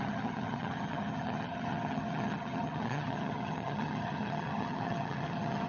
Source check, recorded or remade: remade